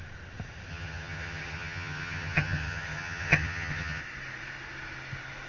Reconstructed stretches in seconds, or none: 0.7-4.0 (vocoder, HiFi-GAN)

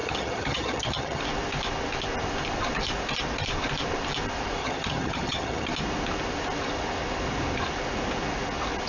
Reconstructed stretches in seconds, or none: 0.0-1.2 (vocoder, HiFi-GAN); 4.6-5.7

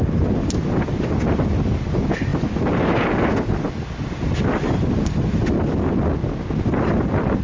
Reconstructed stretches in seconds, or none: none

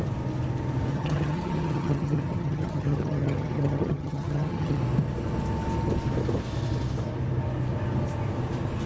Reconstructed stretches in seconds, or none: 0.9-4.8 (vocoder, HiFi-GAN)

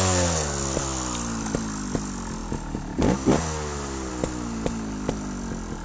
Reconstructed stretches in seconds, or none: none

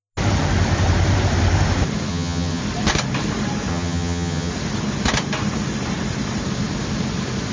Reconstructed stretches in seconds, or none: 2.1-2.6 (vocoder, HiFi-GAN); 3.7-4.5

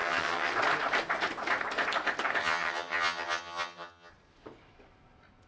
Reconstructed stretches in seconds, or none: 0.0-0.5 (vocoder, HiFi-GAN); 2.4-4.1

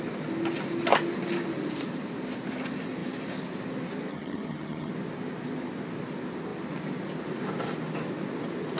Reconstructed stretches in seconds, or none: 4.1-4.9 (vocoder, HiFi-GAN)